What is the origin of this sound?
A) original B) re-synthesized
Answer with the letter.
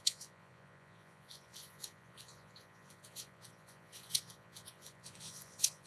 B